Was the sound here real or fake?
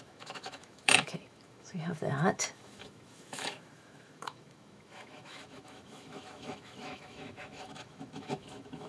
fake